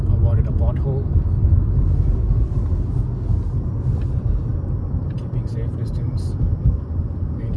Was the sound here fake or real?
real